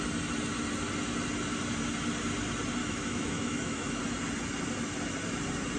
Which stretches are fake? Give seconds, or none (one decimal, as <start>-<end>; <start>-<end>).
2.8-4.0